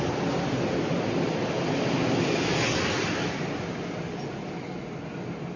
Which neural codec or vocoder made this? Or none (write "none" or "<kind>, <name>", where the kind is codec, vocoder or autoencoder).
none